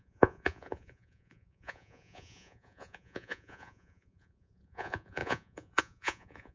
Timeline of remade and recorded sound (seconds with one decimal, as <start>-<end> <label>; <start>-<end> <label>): 0.0-6.5 remade